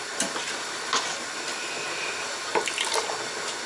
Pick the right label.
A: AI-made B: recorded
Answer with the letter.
B